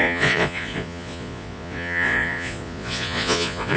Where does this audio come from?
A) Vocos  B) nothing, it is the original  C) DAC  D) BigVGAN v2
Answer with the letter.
A